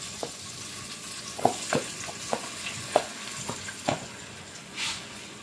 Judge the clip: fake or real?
fake